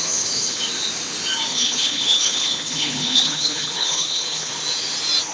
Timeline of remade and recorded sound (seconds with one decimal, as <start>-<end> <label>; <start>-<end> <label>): 0.0-0.6 remade; 0.6-1.5 recorded; 1.5-4.5 remade; 4.5-5.3 recorded